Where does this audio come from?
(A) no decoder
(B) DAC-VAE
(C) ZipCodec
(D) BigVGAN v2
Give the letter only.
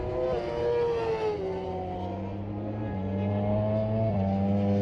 A